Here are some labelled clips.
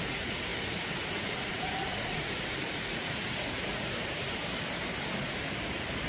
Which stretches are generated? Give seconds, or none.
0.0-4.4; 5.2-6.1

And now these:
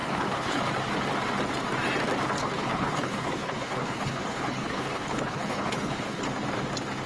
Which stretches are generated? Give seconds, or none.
0.0-0.6; 2.4-6.2